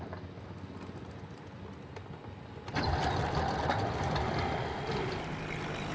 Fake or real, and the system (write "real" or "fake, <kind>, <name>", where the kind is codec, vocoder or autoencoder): real